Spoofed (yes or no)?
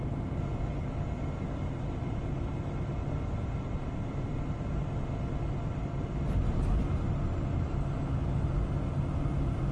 no